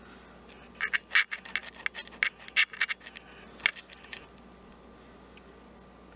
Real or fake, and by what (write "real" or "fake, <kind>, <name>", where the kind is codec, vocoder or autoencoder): real